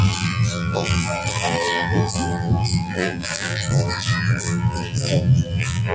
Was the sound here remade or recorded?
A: remade